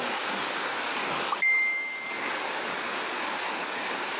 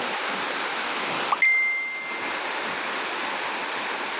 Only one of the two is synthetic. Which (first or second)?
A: first